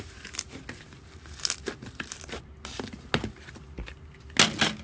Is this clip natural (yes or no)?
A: yes